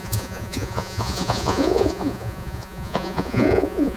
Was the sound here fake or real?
fake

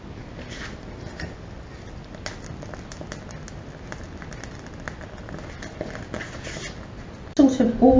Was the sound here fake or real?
real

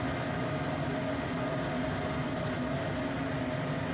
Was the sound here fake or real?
real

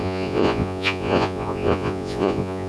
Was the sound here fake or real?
fake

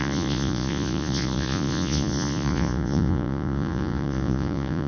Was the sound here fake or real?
fake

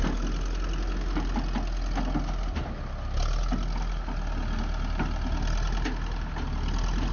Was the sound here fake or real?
real